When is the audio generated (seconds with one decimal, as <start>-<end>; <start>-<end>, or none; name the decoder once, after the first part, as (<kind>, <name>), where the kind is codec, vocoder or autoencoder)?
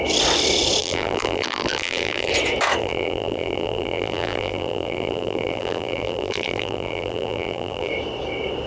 0.8-2.3 (vocoder, BigVGAN v2); 2.8-7.9